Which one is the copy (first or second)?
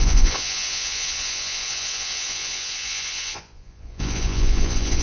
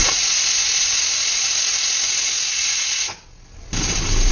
first